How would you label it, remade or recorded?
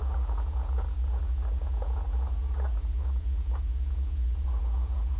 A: remade